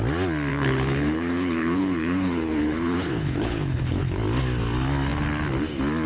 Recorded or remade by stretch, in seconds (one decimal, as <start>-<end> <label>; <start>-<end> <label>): 0.0-0.5 recorded; 0.5-4.2 remade; 4.2-6.1 recorded